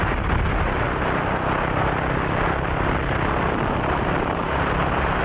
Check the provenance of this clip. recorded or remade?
recorded